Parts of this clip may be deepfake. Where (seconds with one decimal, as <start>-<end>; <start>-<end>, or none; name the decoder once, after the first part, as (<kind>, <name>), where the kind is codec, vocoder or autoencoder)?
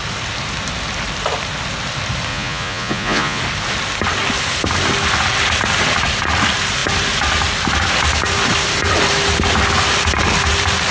2.3-3.4 (vocoder, Vocos)